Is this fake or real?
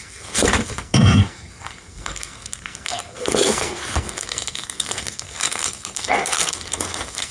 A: fake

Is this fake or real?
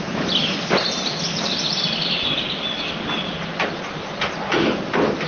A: real